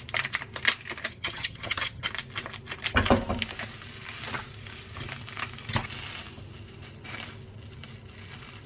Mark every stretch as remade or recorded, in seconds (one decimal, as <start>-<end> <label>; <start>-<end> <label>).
0.0-1.1 recorded; 1.1-2.1 remade; 2.1-8.7 recorded